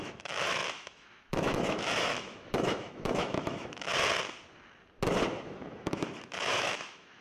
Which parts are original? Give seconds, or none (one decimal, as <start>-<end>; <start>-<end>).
3.9-5.4